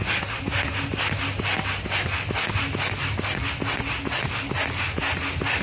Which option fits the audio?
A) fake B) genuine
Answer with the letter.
B